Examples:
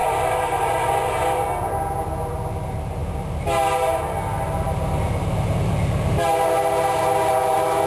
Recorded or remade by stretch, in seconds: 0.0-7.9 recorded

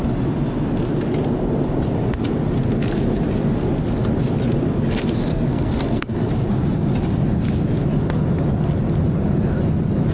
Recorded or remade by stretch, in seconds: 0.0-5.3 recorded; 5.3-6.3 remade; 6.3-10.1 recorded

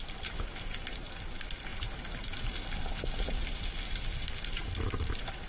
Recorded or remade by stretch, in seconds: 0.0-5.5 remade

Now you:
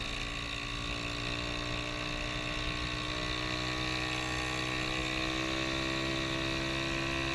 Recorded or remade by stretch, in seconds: 0.0-7.3 recorded

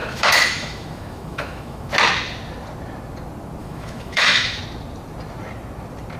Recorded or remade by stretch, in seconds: 0.0-1.9 remade; 1.9-3.6 recorded; 3.6-4.6 remade; 4.6-6.2 recorded